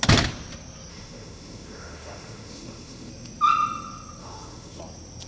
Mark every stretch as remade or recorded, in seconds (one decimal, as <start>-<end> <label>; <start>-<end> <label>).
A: 0.0-0.9 recorded; 0.9-3.1 remade; 3.1-4.2 recorded; 4.2-4.8 remade; 4.8-5.3 recorded